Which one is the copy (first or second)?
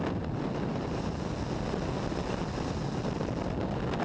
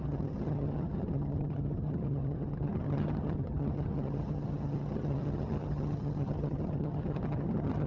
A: second